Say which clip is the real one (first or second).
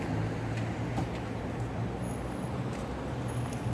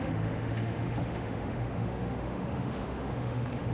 first